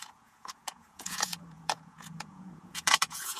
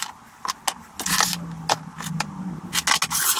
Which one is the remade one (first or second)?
first